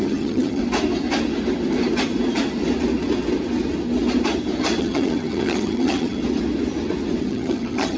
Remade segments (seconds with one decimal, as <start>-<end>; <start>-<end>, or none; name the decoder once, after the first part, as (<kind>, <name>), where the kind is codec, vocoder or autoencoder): 0.0-0.6 (vocoder, HiFi-GAN); 4.8-6.2; 7.2-8.0